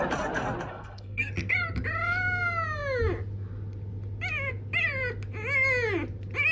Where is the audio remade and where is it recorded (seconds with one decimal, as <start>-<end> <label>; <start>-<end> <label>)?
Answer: 0.0-0.7 recorded; 0.7-1.3 remade; 1.3-6.5 recorded